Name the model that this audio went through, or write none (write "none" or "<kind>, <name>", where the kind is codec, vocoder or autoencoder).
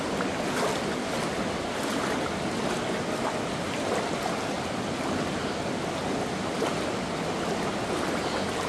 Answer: none